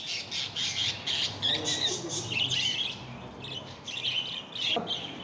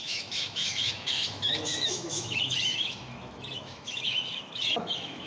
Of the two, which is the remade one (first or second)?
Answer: second